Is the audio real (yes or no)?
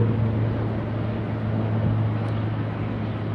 yes